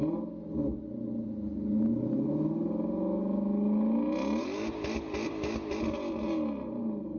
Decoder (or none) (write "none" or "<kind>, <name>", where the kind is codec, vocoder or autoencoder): none